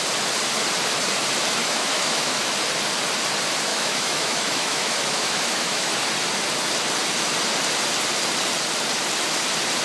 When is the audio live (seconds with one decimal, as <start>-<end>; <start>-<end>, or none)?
0.0-1.6; 2.5-3.7; 5.9-9.8